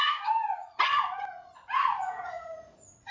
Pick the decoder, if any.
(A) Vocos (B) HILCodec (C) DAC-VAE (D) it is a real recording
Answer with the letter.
A